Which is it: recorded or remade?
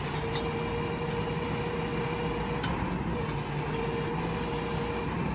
recorded